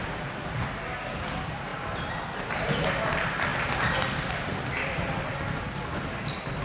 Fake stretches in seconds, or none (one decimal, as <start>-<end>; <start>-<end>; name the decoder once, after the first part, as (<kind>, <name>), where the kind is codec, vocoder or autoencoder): none